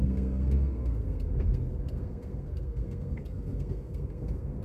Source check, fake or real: fake